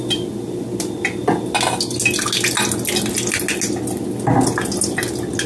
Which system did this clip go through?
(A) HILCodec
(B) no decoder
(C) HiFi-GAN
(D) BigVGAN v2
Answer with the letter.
B